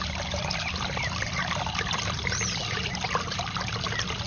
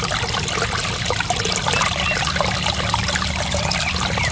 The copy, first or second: first